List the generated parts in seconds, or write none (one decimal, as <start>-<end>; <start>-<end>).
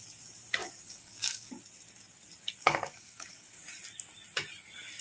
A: 0.6-1.5; 2.6-3.6